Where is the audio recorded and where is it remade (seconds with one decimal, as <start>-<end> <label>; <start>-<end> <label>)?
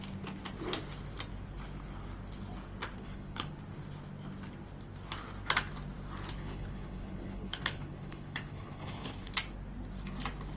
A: 0.0-3.0 recorded; 3.0-3.5 remade; 3.5-6.4 recorded; 6.4-9.3 remade; 9.3-10.6 recorded